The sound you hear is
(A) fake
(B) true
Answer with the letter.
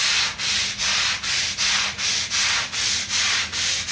B